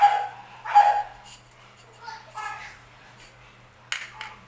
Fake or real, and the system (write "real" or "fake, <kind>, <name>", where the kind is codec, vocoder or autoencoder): real